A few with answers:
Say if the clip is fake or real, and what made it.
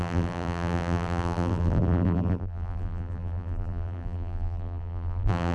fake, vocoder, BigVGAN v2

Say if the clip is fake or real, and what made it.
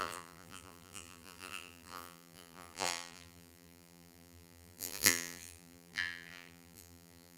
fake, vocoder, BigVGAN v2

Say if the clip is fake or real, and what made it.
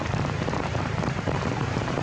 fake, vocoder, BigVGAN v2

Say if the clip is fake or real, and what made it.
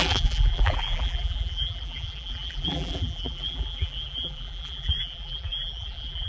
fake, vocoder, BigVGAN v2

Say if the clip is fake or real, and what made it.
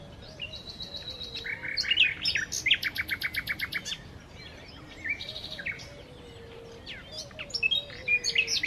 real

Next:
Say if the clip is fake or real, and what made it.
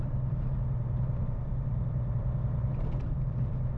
fake, vocoder, BigVGAN v2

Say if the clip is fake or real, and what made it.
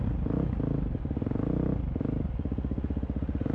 real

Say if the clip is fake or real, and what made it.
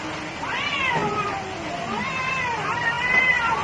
real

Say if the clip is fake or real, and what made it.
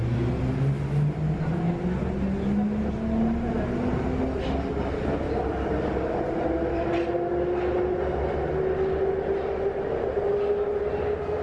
real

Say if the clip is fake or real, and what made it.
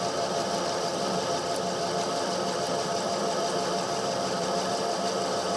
fake, vocoder, BigVGAN v2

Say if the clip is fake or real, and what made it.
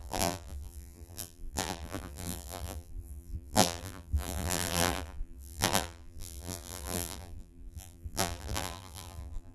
fake, vocoder, BigVGAN v2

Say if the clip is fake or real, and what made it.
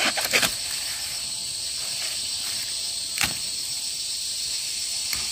fake, vocoder, BigVGAN v2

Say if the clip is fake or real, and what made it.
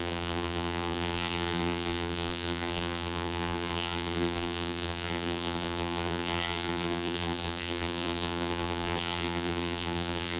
fake, vocoder, BigVGAN v2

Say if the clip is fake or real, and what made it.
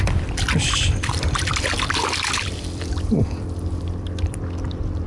fake, vocoder, BigVGAN v2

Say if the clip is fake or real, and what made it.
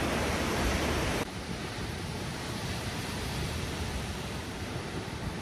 fake, vocoder, BigVGAN v2